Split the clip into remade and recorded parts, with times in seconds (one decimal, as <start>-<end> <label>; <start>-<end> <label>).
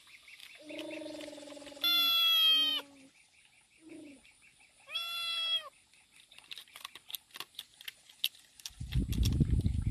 0.0-9.9 recorded